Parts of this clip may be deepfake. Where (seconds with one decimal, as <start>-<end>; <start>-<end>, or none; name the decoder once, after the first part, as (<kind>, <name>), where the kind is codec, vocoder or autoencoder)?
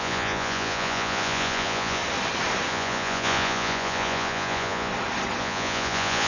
0.0-2.0 (vocoder, Vocos); 2.7-4.9; 5.4-6.3